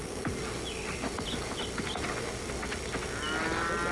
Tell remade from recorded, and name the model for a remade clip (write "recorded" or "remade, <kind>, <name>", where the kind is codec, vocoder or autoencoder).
recorded